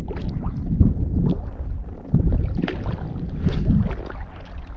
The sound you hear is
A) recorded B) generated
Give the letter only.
A